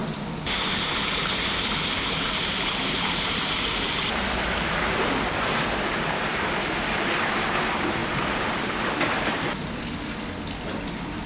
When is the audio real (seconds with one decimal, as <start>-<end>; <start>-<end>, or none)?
5.0-8.0; 8.8-11.3